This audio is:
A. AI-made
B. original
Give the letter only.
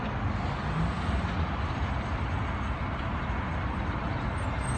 B